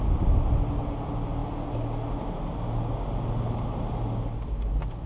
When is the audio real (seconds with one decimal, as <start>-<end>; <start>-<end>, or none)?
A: 0.0-5.1